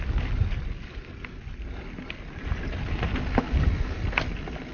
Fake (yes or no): no